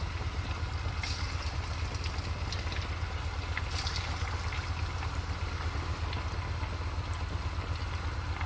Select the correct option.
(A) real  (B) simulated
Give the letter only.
A